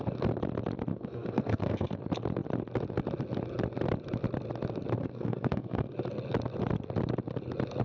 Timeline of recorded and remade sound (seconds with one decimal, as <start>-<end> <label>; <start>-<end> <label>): 0.0-0.9 recorded; 0.9-2.0 remade; 2.0-5.0 recorded; 5.0-5.9 remade; 5.9-7.8 recorded

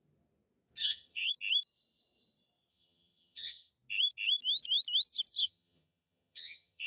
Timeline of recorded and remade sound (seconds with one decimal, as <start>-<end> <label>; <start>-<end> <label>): 0.0-0.8 recorded; 0.8-1.3 remade; 1.3-2.7 recorded; 2.7-3.7 remade; 3.7-5.4 recorded; 5.4-6.9 remade

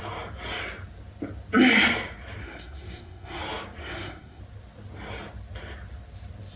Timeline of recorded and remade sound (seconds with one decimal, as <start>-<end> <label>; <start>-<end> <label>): 0.0-2.4 recorded; 2.4-3.4 remade; 3.4-3.8 recorded; 3.8-4.4 remade; 4.4-6.6 recorded

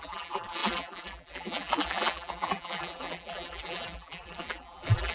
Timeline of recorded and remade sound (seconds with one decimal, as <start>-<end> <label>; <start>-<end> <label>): 0.0-5.1 remade

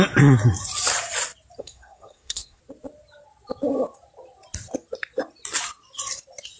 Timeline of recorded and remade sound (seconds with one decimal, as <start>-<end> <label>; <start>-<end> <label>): 0.0-1.6 recorded; 1.6-2.6 remade; 2.6-6.6 recorded

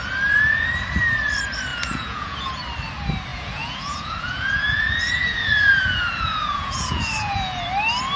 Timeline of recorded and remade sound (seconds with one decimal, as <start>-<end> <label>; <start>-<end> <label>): 0.0-1.7 recorded; 1.7-2.6 remade; 2.6-3.3 recorded; 3.3-7.6 remade; 7.6-8.2 recorded

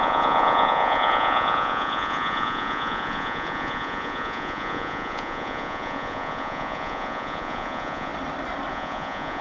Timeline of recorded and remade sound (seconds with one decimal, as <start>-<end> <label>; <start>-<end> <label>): 0.0-8.1 remade; 8.1-8.7 recorded; 8.7-9.4 remade

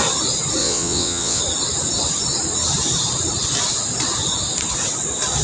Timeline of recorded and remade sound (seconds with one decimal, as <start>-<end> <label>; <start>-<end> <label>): 0.0-0.6 recorded; 0.6-1.4 remade; 1.4-5.4 recorded